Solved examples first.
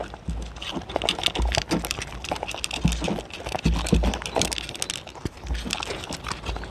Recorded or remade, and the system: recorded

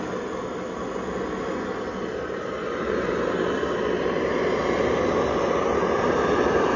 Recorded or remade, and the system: recorded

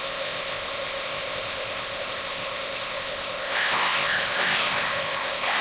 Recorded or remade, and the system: remade, codec, ZipCodec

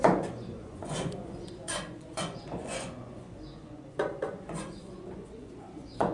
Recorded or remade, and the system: remade, vocoder, Vocos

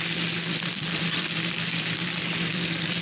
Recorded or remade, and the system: remade, vocoder, BigVGAN v2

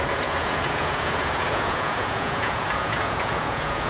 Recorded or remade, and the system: remade, vocoder, Vocos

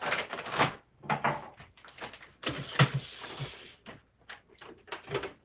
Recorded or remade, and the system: recorded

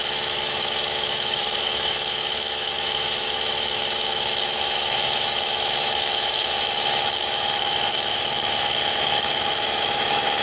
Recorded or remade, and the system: remade, autoencoder, DAC-VAE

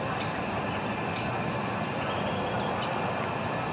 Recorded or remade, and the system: recorded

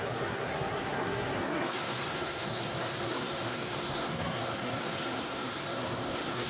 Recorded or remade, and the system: remade, codec, SNAC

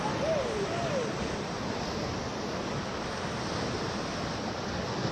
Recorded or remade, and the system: recorded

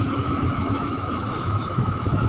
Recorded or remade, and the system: remade, autoencoder, DAC-VAE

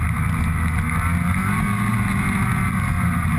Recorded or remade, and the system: recorded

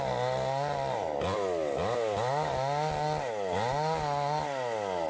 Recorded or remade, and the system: recorded